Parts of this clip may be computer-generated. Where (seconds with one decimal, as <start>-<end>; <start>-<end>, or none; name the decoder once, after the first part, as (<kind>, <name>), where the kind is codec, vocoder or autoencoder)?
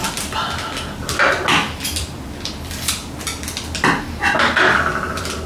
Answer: 0.0-3.0 (vocoder, BigVGAN v2); 4.0-5.5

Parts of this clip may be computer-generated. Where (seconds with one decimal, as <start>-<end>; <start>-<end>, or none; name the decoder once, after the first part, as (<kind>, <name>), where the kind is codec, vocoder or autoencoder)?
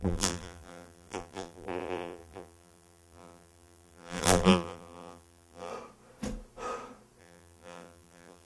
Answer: 0.0-5.7 (vocoder, BigVGAN v2); 7.2-8.4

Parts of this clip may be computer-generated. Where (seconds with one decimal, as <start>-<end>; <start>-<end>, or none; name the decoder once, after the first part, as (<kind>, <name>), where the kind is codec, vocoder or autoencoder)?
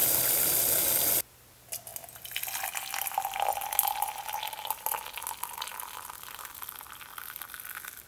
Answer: 0.0-0.6 (vocoder, BigVGAN v2)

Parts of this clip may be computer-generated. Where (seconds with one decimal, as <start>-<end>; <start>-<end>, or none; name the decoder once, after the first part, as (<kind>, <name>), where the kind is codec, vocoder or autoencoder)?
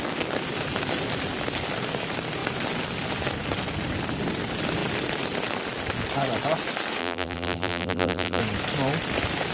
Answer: 7.0-8.4 (vocoder, BigVGAN v2)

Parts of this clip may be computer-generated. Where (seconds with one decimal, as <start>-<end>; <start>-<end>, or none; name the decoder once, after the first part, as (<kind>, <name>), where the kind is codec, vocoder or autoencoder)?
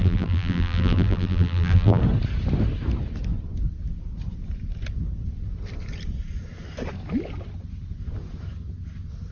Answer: 0.0-2.0 (vocoder, BigVGAN v2)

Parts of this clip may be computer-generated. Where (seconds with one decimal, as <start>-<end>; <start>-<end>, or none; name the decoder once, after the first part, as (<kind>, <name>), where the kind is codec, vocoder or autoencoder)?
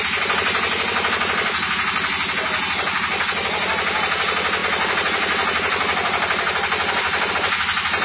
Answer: none